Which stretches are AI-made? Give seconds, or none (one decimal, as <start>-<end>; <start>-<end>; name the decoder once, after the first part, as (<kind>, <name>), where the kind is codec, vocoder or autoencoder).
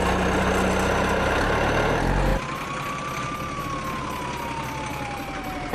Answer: 2.3-3.6 (vocoder, BigVGAN v2); 4.9-5.7